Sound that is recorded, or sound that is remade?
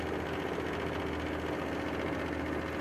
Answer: recorded